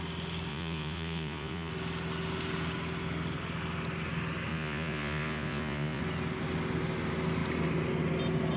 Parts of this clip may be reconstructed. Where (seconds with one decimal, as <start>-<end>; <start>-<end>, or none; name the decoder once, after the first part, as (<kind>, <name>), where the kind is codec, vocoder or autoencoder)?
0.5-1.7 (vocoder, Vocos); 4.5-6.0